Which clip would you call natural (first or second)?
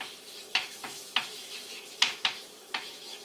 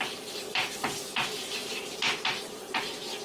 second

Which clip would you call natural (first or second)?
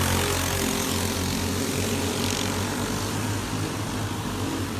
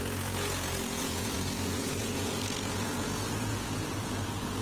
first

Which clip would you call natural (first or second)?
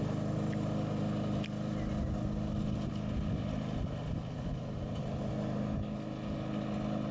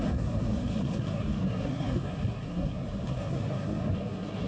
first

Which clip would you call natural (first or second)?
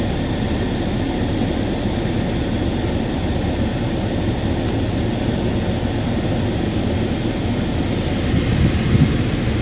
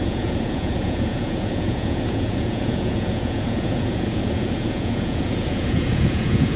first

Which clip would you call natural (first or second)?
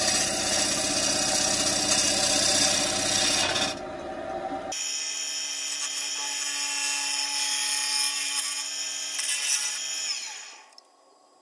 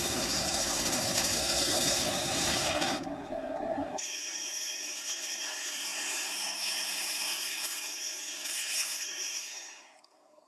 first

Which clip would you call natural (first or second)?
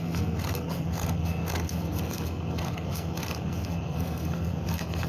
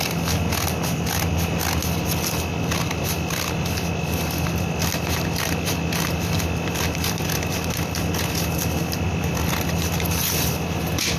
second